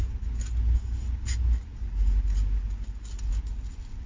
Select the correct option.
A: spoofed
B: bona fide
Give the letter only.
B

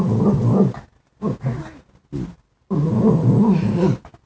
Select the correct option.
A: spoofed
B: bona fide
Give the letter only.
B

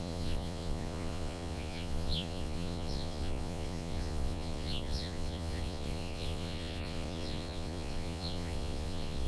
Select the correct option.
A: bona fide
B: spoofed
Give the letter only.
B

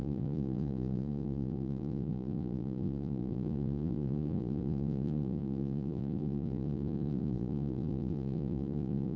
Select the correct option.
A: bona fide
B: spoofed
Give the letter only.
B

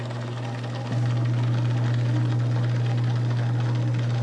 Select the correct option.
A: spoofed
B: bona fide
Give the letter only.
B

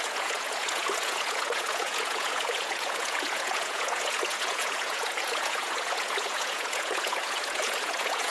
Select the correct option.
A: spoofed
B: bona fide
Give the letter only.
A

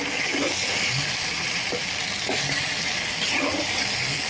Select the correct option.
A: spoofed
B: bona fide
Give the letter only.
B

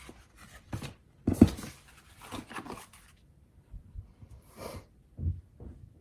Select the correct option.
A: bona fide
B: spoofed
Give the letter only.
A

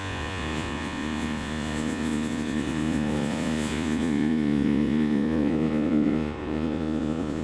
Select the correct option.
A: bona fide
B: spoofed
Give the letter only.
B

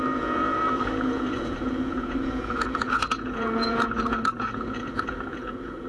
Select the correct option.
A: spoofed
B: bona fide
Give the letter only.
A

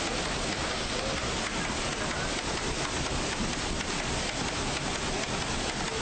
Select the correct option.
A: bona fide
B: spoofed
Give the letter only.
A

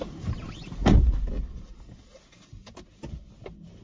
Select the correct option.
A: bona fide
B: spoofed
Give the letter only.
A